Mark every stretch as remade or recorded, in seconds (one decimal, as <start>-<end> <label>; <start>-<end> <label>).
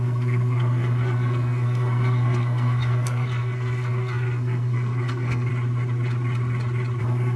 0.0-5.5 remade; 5.5-7.0 recorded; 7.0-7.4 remade